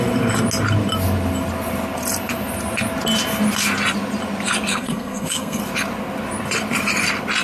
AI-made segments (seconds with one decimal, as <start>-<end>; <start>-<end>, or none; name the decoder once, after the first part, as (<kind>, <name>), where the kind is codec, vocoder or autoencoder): 4.7-5.6 (codec, SNAC)